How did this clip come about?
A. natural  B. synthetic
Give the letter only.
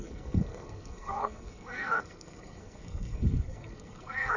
B